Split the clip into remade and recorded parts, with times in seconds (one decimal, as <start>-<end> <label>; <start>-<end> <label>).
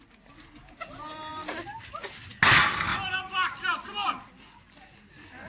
0.0-1.3 recorded; 1.3-2.3 remade; 2.3-5.5 recorded